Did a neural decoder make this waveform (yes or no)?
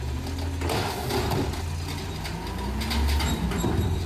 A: no